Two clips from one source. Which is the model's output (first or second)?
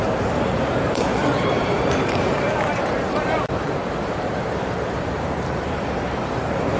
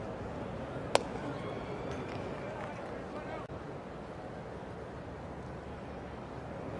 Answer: first